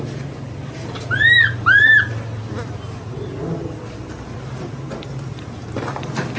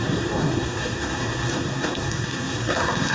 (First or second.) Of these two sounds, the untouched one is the first